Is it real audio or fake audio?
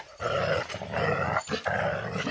real